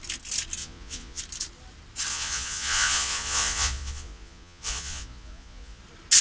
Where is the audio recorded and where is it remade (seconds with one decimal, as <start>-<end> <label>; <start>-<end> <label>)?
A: 0.0-0.6 recorded; 0.6-1.2 remade; 1.2-2.1 recorded; 2.1-5.8 remade; 5.8-6.2 recorded